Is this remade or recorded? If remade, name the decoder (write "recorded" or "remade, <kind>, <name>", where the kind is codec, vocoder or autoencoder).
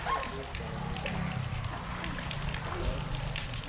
remade, vocoder, BigVGAN v2